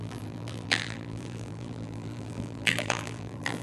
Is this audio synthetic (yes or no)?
yes